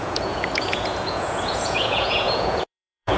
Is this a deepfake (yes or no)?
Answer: yes